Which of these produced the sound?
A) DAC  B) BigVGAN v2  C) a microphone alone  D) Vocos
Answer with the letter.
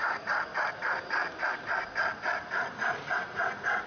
C